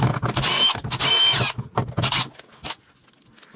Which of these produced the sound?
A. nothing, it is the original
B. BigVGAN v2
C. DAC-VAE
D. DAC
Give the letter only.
A